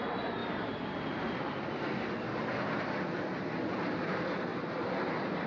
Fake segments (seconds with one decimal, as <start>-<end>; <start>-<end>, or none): 0.4-1.6; 4.5-5.5